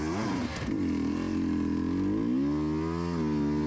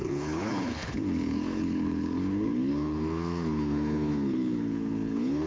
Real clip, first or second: first